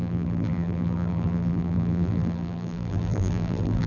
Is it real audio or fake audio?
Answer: fake